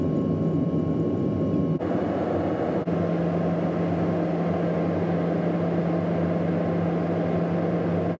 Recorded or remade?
recorded